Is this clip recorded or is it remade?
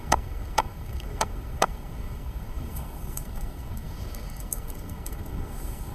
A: remade